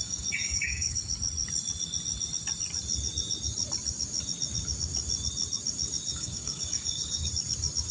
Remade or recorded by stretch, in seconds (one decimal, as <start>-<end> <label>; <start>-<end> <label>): 0.0-1.1 remade; 1.1-6.1 recorded; 6.1-7.3 remade; 7.3-7.9 recorded